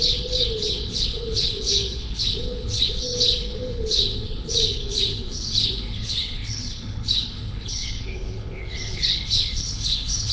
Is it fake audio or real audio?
fake